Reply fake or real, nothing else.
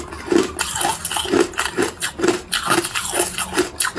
real